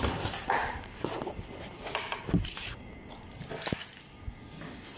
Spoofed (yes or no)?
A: no